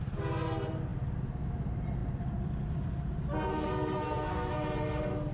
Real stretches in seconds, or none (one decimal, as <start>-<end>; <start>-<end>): 0.0-3.5; 4.5-5.3